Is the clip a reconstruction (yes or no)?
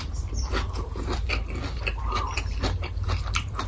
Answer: yes